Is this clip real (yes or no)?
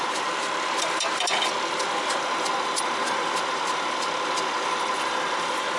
no